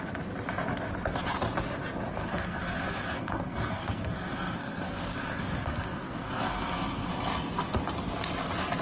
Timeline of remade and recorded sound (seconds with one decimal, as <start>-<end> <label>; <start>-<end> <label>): 0.0-2.2 recorded; 2.2-7.1 remade; 7.1-8.8 recorded